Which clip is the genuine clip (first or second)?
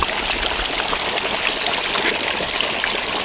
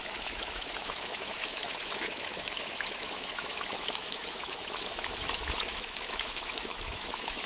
first